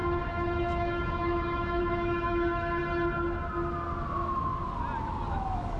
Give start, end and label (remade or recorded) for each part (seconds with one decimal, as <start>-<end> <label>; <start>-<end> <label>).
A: 0.0-2.8 remade; 2.8-5.3 recorded; 5.3-5.8 remade